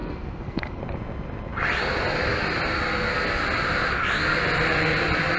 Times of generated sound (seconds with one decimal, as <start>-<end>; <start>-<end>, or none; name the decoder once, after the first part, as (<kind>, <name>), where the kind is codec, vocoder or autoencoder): 0.0-0.8 (codec, SNAC)